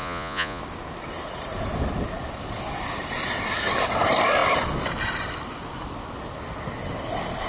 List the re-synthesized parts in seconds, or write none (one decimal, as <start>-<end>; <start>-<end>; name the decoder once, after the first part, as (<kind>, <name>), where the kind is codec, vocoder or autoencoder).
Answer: 0.0-0.6 (vocoder, Vocos)